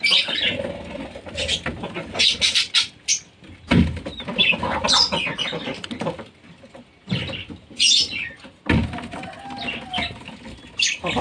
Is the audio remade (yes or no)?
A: no